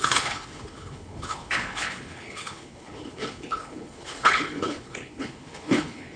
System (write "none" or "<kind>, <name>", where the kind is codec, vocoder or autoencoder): codec, HILCodec